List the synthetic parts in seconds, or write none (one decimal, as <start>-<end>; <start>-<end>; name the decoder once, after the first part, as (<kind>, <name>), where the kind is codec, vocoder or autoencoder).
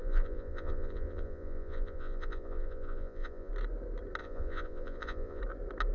0.0-3.5 (vocoder, Vocos); 4.2-5.4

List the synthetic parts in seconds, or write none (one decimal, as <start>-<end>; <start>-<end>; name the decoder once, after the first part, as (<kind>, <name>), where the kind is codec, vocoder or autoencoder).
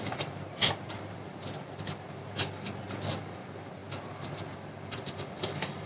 none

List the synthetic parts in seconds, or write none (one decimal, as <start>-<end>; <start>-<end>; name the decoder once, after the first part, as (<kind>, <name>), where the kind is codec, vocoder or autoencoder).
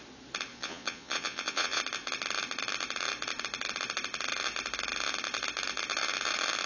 0.5-1.8 (vocoder, Vocos)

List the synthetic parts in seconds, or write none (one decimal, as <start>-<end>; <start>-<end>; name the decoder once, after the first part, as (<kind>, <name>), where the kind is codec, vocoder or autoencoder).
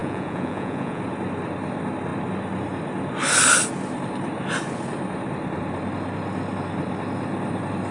0.0-1.0 (vocoder, Vocos)